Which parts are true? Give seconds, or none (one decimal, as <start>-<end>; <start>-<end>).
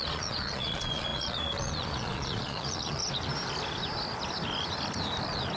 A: 3.0-5.6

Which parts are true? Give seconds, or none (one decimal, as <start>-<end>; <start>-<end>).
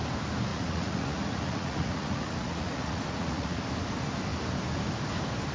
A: 0.0-0.5; 3.6-5.5